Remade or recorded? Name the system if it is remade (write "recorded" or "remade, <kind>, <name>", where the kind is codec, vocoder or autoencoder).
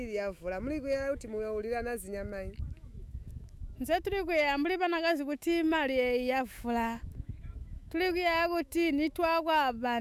remade, autoencoder, DAC-VAE